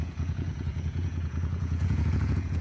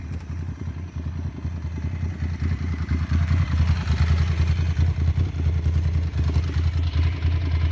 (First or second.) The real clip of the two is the second